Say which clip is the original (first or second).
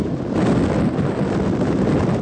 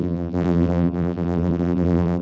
first